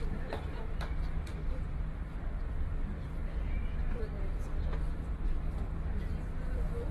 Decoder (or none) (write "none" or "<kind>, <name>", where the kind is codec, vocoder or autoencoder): vocoder, BigVGAN v2